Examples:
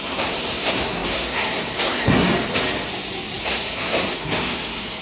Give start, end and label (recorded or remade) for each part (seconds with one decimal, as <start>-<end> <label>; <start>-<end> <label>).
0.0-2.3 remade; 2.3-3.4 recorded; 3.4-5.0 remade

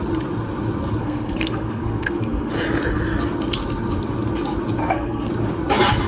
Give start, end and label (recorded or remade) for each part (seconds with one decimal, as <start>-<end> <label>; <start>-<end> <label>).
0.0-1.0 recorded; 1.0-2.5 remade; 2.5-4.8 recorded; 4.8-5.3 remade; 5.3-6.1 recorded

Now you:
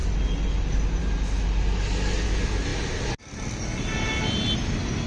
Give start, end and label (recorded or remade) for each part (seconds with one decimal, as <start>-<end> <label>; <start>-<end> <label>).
0.0-5.1 recorded

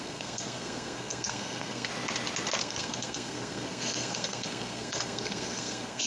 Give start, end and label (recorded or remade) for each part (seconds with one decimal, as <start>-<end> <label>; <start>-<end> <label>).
0.0-1.9 remade; 1.9-2.6 recorded; 2.6-6.1 remade